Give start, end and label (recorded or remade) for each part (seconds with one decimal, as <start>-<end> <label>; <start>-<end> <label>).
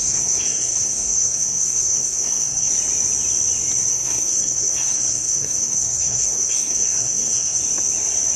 0.0-2.7 remade; 2.7-3.9 recorded; 3.9-7.6 remade; 7.6-8.4 recorded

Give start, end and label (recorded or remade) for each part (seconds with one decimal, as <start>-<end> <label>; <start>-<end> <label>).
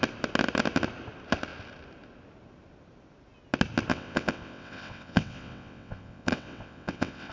0.0-3.9 recorded; 3.9-7.3 remade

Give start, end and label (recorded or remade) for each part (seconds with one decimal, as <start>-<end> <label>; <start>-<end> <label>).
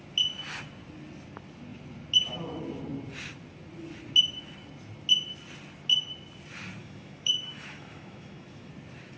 0.0-6.8 recorded; 6.8-8.7 remade; 8.7-9.2 recorded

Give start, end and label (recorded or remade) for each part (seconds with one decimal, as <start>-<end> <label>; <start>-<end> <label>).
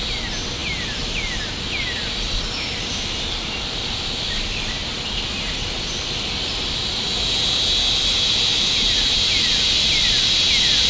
0.0-10.9 recorded